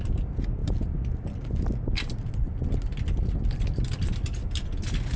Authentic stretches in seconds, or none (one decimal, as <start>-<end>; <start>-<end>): 0.0-5.2